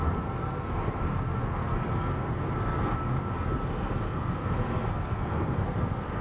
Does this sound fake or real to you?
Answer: fake